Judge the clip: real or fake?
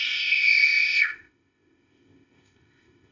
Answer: fake